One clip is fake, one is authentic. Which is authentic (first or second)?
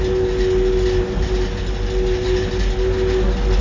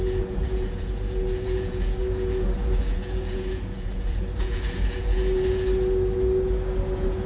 first